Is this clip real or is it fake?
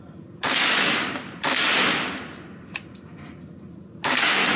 real